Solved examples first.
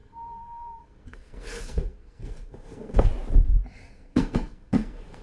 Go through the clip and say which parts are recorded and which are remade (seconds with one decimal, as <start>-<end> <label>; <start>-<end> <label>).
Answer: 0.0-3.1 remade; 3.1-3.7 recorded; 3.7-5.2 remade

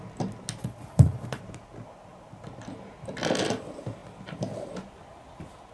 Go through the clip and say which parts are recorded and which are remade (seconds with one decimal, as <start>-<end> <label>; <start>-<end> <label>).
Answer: 0.0-0.6 recorded; 0.6-1.4 remade; 1.4-5.7 recorded

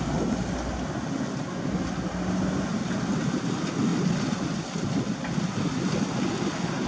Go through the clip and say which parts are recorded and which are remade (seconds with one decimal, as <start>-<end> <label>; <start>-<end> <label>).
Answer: 0.0-6.9 recorded